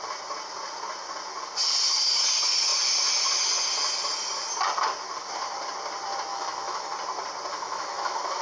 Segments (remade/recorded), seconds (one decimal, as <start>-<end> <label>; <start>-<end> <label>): 0.0-6.3 recorded; 6.3-6.9 remade; 6.9-7.5 recorded; 7.5-8.4 remade